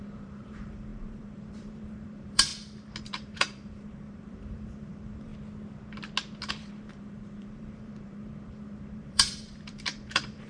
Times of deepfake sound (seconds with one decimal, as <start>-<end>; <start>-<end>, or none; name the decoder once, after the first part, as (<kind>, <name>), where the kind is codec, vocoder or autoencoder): 0.0-2.5 (vocoder, BigVGAN v2); 3.0-5.3; 6.5-10.5